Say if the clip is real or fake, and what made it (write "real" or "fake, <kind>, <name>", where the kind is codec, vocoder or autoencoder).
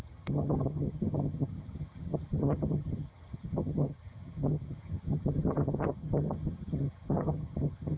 fake, vocoder, HiFi-GAN